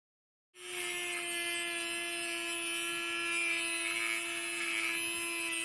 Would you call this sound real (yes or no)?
yes